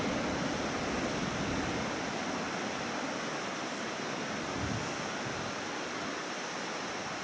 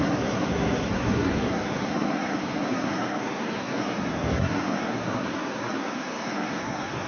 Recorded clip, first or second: first